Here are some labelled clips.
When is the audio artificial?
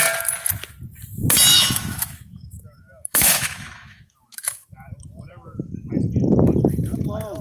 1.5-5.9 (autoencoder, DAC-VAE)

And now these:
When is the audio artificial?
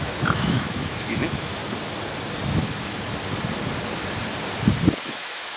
0.0-1.6 (autoencoder, DAC-VAE); 5.0-5.6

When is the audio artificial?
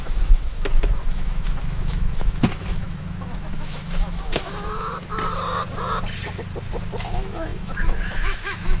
0.0-4.9 (autoencoder, DAC-VAE); 7.1-8.8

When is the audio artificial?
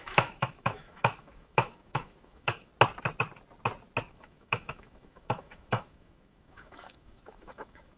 0.0-2.7 (autoencoder, DAC-VAE); 4.1-8.0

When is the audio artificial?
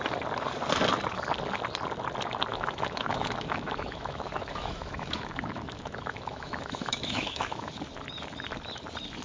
2.5-7.7 (autoencoder, DAC-VAE)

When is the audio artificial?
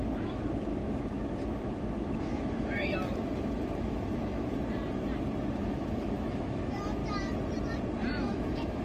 0.0-4.5 (autoencoder, DAC-VAE); 5.6-7.0; 8.1-8.8